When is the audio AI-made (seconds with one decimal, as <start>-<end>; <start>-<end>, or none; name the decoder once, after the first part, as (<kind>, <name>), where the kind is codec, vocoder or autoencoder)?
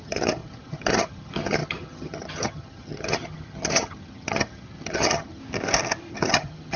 0.0-5.4 (vocoder, HiFi-GAN); 6.1-6.8